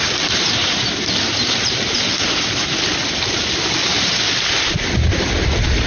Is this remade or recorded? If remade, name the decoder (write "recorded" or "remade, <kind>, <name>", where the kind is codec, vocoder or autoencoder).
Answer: remade, vocoder, BigVGAN v2